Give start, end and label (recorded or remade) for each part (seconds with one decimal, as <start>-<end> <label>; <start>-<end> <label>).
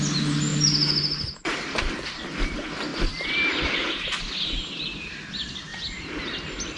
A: 0.0-6.8 recorded